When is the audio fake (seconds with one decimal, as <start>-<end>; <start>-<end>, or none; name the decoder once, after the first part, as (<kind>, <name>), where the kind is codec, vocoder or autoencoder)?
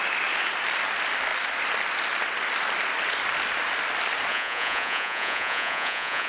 4.3-6.3 (vocoder, Vocos)